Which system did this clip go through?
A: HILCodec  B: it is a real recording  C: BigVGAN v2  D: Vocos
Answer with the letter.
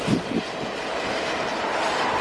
B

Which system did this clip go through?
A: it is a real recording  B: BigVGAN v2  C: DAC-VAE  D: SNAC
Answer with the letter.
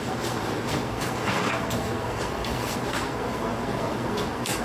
D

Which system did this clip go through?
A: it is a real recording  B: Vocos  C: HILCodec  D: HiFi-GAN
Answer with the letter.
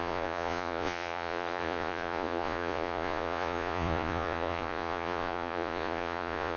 B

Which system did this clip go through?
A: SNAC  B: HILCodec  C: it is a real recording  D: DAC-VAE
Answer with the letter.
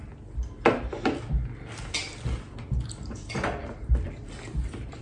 C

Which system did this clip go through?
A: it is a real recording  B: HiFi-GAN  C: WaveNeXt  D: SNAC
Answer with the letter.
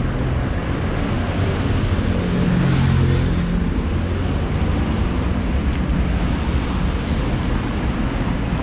A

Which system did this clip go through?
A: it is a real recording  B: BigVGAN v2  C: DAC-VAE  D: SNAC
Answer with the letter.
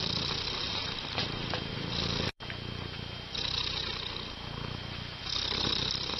B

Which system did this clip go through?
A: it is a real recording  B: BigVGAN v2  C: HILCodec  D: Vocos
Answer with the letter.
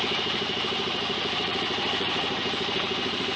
D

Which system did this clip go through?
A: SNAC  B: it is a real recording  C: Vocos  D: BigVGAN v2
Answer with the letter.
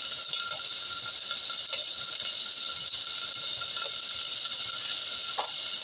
B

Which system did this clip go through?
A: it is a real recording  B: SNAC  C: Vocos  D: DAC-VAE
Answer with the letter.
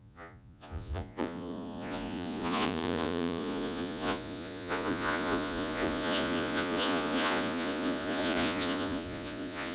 C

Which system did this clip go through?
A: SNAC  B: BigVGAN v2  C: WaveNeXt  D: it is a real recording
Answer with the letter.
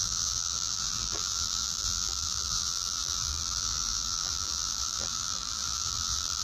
B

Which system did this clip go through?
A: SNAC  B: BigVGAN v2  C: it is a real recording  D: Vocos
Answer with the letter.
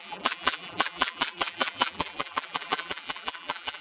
B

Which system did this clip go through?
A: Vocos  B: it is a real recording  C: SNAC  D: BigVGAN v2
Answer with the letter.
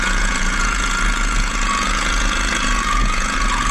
A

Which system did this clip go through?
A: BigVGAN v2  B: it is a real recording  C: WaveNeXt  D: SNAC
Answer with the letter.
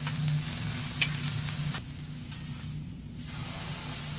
B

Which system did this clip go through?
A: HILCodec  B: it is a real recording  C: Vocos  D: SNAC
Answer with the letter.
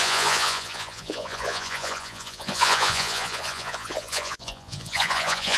C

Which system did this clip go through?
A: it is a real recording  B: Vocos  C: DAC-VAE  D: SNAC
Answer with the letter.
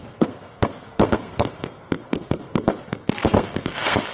D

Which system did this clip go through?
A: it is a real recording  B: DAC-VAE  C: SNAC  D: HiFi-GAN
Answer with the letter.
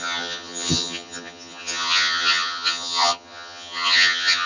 D